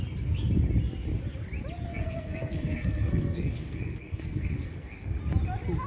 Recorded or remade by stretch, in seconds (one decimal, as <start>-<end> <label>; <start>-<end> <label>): 0.0-1.9 recorded; 1.9-5.2 remade; 5.2-5.9 recorded